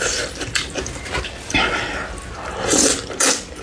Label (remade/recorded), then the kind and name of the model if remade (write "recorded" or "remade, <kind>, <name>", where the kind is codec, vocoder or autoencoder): recorded